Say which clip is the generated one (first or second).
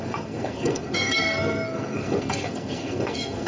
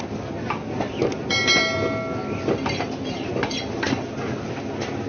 first